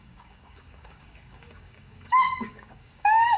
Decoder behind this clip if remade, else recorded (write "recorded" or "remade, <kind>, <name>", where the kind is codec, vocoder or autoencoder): remade, codec, DAC